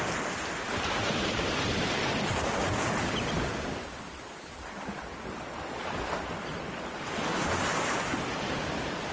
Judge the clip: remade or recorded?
remade